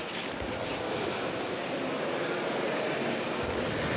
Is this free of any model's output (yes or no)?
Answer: yes